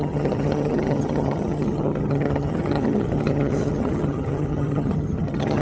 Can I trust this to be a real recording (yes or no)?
no